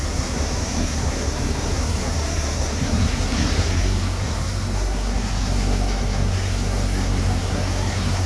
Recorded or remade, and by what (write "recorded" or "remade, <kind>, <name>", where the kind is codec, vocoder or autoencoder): remade, codec, SNAC